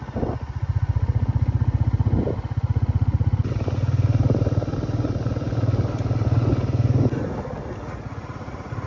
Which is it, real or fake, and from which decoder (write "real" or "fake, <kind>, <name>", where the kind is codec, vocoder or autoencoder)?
real